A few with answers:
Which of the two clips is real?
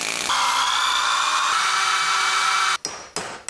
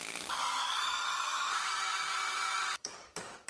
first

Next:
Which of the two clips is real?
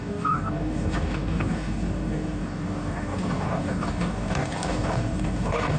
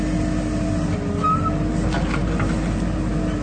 second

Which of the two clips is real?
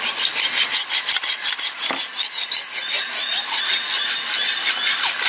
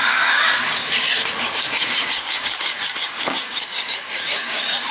first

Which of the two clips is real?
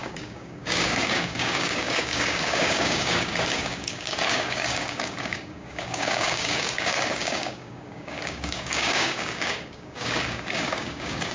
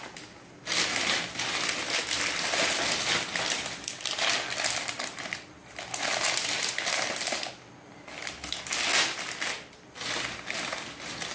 second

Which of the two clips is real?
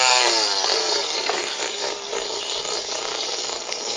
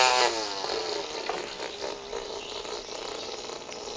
second